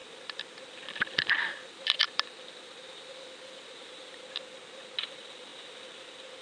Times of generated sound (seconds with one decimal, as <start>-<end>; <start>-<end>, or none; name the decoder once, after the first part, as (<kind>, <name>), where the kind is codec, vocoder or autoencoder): 0.0-3.8 (vocoder, BigVGAN v2)